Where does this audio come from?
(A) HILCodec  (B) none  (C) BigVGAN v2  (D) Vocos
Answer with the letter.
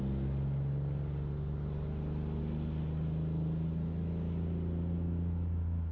B